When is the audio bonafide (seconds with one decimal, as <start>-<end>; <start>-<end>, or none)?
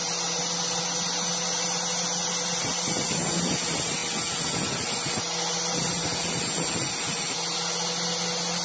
0.0-8.6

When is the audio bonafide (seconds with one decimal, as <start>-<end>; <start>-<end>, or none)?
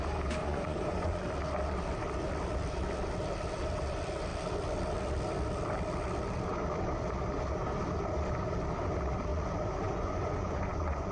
0.0-0.4; 1.2-9.3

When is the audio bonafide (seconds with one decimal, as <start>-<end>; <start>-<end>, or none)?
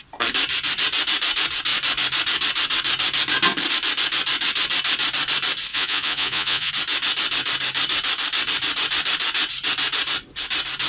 0.0-5.7; 6.7-10.9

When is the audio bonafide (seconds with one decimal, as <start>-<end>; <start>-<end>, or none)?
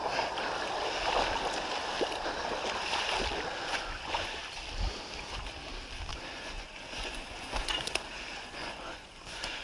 0.0-3.6; 4.4-6.1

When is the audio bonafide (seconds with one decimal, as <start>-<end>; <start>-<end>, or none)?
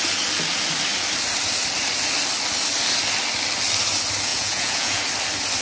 0.0-4.3; 5.0-5.6